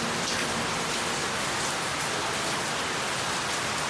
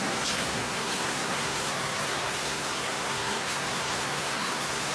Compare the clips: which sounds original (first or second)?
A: first